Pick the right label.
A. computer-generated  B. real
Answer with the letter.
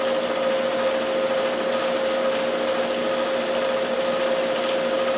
B